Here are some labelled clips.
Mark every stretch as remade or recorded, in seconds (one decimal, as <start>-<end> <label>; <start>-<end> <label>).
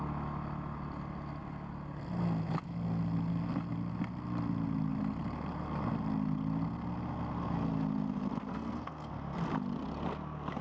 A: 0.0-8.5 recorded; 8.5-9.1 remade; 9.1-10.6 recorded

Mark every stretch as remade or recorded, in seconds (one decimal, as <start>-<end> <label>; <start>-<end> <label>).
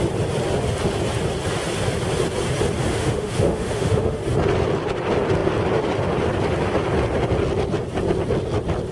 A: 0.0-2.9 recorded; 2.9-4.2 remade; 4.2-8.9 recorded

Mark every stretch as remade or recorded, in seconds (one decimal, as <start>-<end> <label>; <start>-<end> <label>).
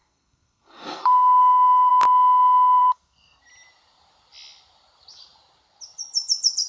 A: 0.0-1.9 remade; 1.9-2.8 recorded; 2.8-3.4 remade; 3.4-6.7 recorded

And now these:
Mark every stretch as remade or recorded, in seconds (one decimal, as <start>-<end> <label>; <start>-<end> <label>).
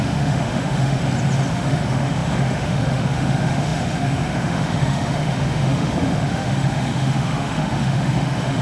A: 0.0-1.0 remade; 1.0-1.5 recorded; 1.5-8.6 remade